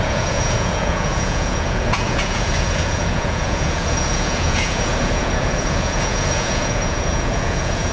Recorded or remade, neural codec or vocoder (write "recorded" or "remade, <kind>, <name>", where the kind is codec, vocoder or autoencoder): remade, vocoder, Vocos